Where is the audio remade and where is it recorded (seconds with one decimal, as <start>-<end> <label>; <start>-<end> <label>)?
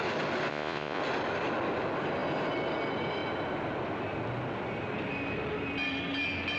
0.0-0.5 recorded; 0.5-1.0 remade; 1.0-6.6 recorded